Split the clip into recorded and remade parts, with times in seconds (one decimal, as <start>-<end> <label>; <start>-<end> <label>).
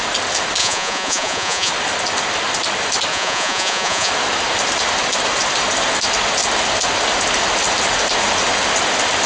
0.0-0.6 recorded; 0.6-1.7 remade; 1.7-3.1 recorded; 3.1-4.1 remade; 4.1-9.3 recorded